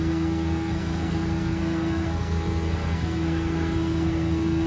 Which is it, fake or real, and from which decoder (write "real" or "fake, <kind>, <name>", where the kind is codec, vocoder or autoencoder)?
fake, codec, SNAC